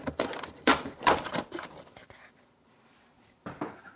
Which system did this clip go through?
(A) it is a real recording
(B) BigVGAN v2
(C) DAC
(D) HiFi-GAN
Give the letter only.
B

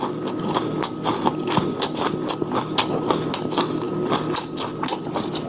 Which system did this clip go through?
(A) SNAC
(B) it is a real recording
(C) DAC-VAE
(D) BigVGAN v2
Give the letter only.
B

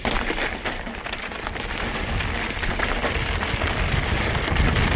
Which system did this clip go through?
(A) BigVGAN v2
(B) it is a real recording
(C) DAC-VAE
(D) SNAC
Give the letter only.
B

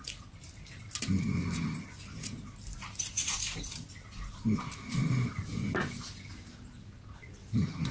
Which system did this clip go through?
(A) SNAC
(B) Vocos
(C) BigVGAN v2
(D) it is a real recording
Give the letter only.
D